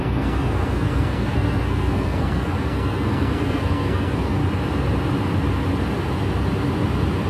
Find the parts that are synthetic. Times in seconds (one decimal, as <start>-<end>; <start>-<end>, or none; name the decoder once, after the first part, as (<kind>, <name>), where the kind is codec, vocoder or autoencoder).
0.0-4.4 (codec, SNAC)